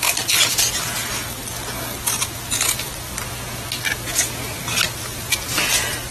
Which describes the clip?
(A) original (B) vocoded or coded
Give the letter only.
A